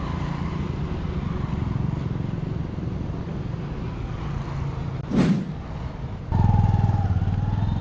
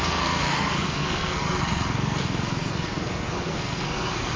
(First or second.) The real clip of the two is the first